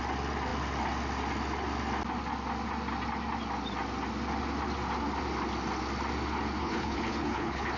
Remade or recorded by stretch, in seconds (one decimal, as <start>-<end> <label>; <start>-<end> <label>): 0.0-6.6 recorded; 6.6-7.8 remade